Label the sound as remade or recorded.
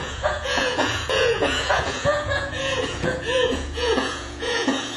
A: remade